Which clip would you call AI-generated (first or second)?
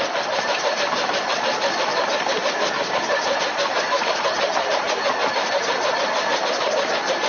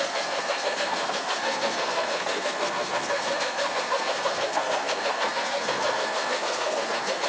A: second